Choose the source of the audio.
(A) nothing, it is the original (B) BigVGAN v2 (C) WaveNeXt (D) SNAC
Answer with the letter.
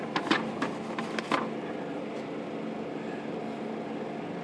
A